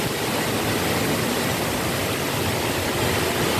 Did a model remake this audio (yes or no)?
no